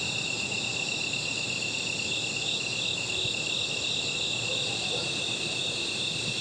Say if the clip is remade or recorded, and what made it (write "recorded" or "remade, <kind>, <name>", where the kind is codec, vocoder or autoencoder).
recorded